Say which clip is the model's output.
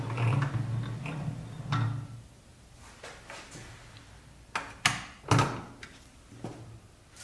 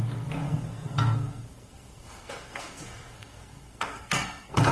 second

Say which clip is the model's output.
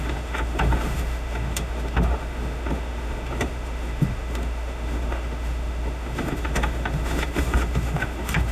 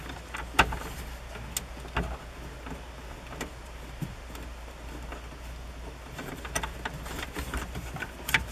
first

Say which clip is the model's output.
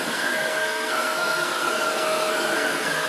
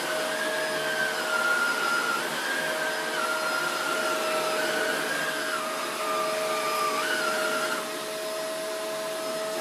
first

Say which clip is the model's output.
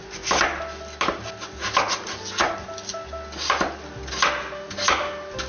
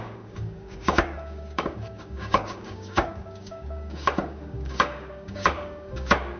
second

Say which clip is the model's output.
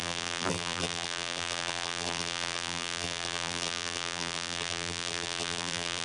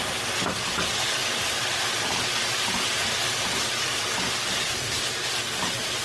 first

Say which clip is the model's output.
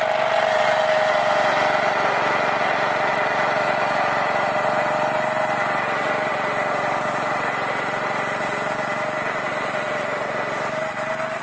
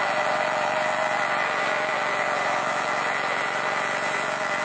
second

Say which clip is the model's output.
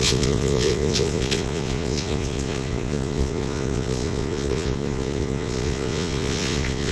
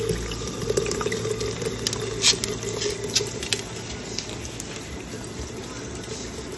first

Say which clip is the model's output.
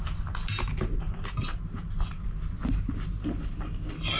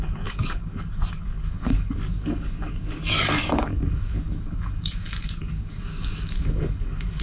second